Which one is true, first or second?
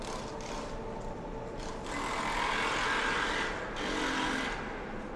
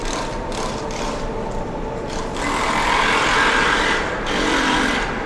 first